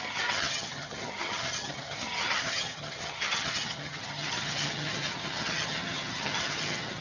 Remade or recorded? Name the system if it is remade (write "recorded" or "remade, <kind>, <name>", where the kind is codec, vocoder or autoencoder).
remade, vocoder, HiFi-GAN